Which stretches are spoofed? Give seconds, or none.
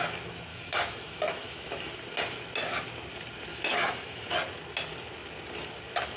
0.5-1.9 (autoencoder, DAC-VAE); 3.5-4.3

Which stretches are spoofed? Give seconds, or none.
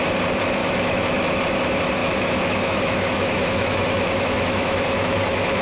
0.6-1.4 (autoencoder, DAC-VAE); 2.0-5.6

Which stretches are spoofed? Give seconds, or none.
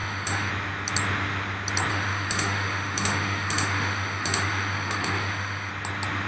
0.0-0.5 (autoencoder, DAC-VAE); 1.9-5.7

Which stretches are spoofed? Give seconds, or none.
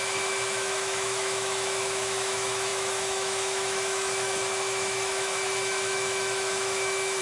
0.0-7.2 (autoencoder, DAC-VAE)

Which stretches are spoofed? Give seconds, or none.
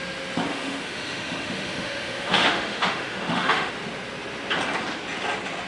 0.5-3.7 (autoencoder, DAC-VAE)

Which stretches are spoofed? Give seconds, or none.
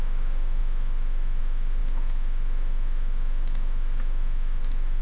0.0-5.0 (autoencoder, DAC-VAE)